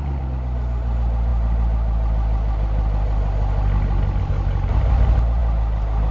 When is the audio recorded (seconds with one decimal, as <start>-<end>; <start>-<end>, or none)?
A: 0.0-6.1